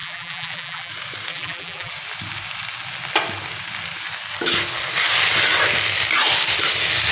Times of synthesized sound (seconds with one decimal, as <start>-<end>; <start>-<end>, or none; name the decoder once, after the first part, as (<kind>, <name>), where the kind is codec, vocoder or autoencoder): 0.0-0.9 (vocoder, BigVGAN v2); 1.3-1.9